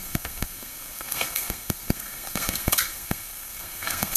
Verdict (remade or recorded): remade